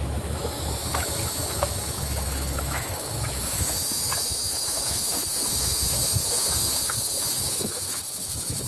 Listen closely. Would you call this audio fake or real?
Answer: fake